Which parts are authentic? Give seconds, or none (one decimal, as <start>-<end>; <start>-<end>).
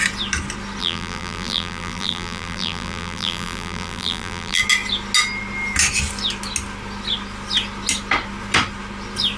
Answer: 0.0-0.8; 4.6-9.4